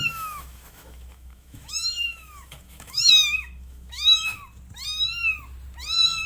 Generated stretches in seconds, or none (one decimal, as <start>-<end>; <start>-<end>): 0.0-4.4